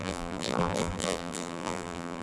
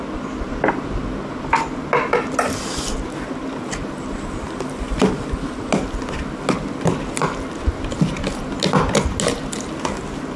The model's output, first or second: first